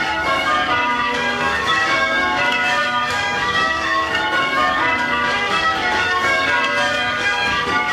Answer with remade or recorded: remade